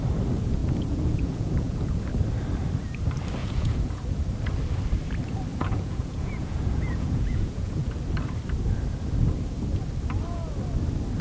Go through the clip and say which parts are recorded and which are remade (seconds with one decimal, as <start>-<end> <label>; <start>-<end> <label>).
0.0-0.6 recorded; 0.6-2.0 remade; 2.0-3.4 recorded; 3.4-4.0 remade; 4.0-5.5 recorded; 5.5-7.9 remade; 7.9-11.2 recorded